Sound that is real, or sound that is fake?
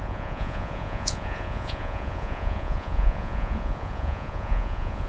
fake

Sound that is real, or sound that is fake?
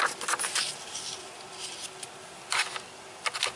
real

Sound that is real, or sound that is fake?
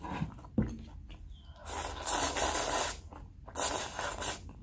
real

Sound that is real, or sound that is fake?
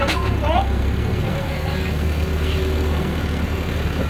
fake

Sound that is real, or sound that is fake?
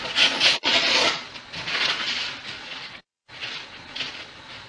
fake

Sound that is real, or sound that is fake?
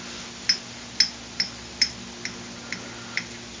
real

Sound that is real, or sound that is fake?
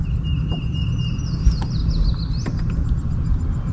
real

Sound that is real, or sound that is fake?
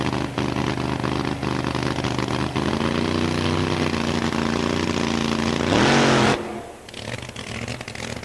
real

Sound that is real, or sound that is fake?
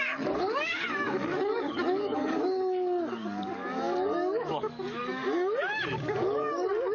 fake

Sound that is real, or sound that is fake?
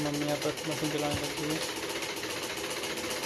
real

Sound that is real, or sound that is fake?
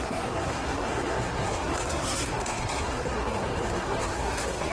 fake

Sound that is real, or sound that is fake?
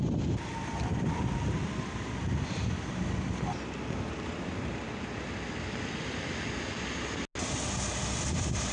real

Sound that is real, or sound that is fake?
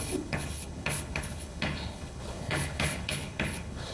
fake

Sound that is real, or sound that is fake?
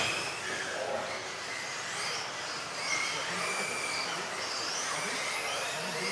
real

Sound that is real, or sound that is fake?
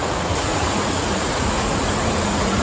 fake